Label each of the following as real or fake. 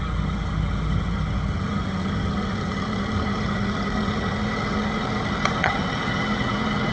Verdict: fake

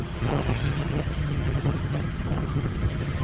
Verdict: fake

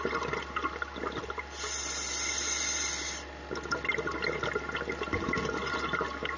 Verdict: real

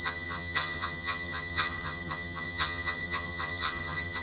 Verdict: fake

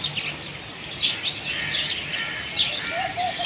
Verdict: real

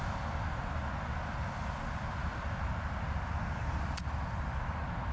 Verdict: real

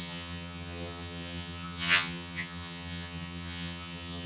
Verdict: fake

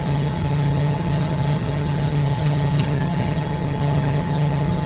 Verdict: fake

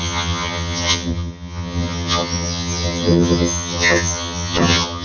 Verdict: fake